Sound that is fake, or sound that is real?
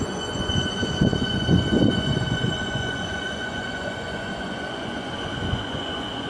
fake